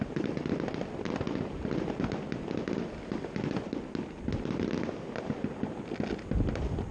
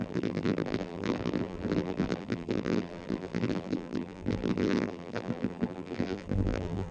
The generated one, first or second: second